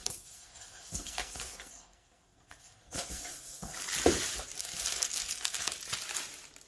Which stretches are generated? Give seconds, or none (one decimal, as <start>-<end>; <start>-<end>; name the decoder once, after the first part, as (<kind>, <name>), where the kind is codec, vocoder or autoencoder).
0.0-3.8 (codec, SNAC); 4.6-5.7